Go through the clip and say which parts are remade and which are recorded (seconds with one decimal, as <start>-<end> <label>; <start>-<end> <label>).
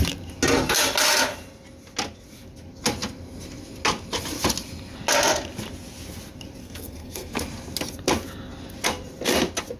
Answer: 0.0-6.6 recorded; 6.6-7.4 remade; 7.4-9.8 recorded